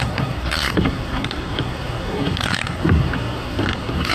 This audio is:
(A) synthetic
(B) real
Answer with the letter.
A